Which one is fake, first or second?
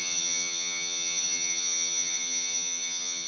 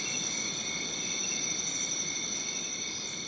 first